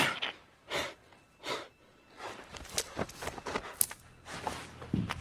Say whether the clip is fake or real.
real